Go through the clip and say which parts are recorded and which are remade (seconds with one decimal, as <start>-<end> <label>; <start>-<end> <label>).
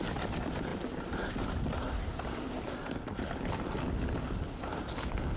0.0-5.4 recorded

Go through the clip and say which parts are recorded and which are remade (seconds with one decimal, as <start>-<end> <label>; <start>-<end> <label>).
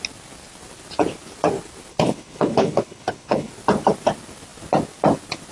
0.0-1.9 recorded; 1.9-3.5 remade; 3.5-5.5 recorded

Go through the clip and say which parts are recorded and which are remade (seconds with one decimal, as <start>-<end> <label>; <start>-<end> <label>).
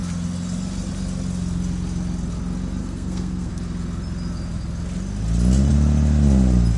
0.0-2.8 recorded; 2.8-3.5 remade; 3.5-6.8 recorded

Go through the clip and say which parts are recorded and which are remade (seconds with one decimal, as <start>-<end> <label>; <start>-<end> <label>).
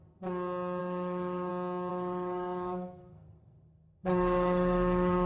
0.0-0.8 recorded; 0.8-1.5 remade; 1.5-1.9 recorded; 1.9-5.3 remade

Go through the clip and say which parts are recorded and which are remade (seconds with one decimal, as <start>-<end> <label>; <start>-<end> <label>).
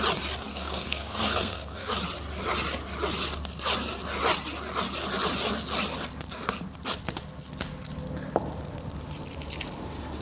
0.0-0.5 recorded; 0.5-1.9 remade; 1.9-10.2 recorded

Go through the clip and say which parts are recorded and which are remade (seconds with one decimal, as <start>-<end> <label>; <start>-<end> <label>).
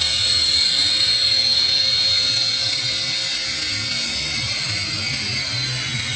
0.0-6.2 recorded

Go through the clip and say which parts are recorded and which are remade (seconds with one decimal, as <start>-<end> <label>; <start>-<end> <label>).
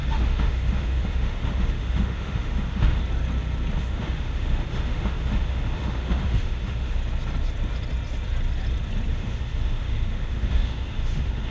0.0-3.0 remade; 3.0-3.8 recorded; 3.8-7.0 remade; 7.0-9.1 recorded; 9.1-11.5 remade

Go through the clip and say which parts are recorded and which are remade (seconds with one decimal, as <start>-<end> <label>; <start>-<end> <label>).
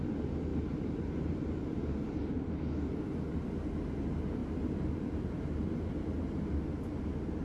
0.0-0.5 recorded; 0.5-2.5 remade; 2.5-4.4 recorded; 4.4-6.5 remade; 6.5-7.4 recorded